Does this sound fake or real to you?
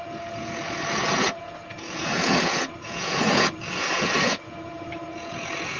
fake